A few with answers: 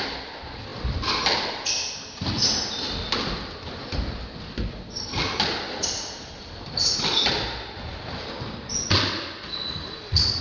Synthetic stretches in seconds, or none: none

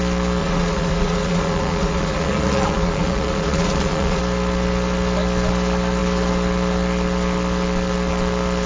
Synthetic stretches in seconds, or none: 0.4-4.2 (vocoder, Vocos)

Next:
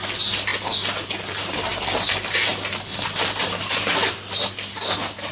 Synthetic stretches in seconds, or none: none